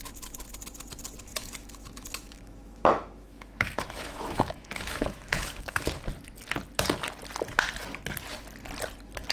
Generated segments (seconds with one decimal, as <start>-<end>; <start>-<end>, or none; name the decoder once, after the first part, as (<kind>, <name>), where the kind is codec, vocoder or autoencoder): 1.3-5.8 (autoencoder, DAC-VAE)